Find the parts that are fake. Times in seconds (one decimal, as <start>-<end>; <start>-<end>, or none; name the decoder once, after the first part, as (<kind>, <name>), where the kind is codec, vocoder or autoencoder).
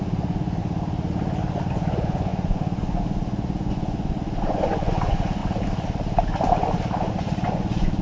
0.0-0.6 (vocoder, Vocos); 1.7-5.4; 7.1-8.0